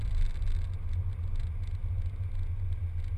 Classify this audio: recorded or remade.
recorded